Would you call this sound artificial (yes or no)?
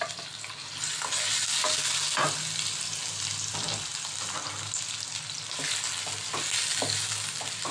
no